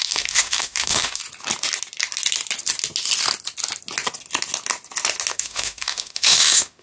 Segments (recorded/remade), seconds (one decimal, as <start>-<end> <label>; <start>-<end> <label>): 0.0-1.2 remade; 1.2-5.3 recorded; 5.3-6.8 remade